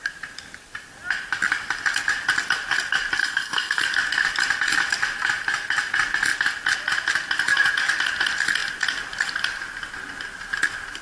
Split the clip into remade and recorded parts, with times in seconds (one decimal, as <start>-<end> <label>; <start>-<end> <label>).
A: 0.0-3.2 recorded; 3.2-3.8 remade; 3.8-11.0 recorded